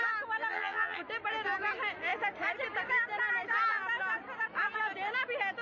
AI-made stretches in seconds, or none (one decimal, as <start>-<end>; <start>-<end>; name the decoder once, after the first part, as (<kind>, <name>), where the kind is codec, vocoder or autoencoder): 0.5-1.0 (vocoder, HiFi-GAN)